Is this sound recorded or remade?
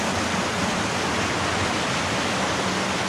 recorded